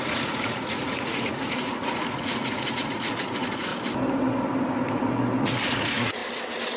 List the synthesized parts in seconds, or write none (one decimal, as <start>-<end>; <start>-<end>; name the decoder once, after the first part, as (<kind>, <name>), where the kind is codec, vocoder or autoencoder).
0.0-3.7 (vocoder, Vocos); 5.4-6.2